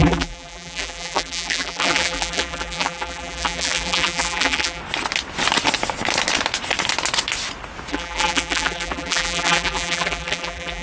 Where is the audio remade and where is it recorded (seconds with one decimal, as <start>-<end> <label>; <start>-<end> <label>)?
0.0-4.8 remade; 4.8-7.9 recorded; 7.9-10.8 remade